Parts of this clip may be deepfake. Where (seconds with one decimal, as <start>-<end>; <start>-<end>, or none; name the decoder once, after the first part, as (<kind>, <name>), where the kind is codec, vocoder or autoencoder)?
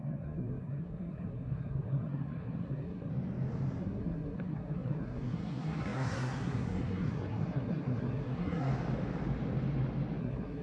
0.0-3.1 (codec, SNAC); 3.8-8.7; 10.2-10.6